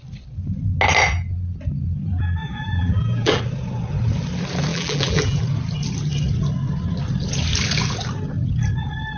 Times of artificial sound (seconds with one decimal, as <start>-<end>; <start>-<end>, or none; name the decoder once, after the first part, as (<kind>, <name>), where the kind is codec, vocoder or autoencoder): 2.4-3.4 (vocoder, BigVGAN v2); 4.7-5.4